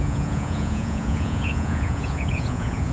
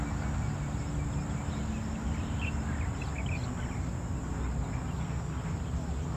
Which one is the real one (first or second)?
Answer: second